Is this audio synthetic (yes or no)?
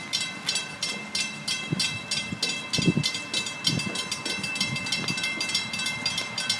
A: no